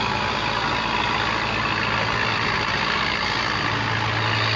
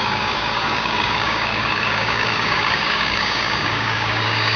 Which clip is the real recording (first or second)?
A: first